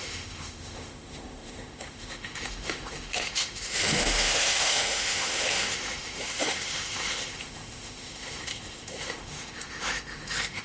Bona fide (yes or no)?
no